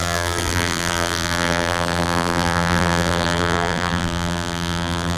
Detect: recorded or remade remade